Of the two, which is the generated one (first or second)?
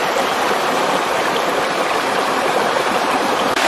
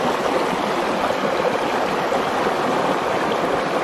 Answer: first